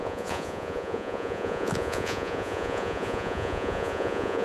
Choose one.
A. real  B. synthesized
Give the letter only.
B